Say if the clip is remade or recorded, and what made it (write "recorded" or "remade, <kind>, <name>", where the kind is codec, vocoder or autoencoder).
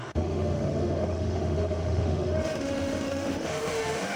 remade, autoencoder, DAC-VAE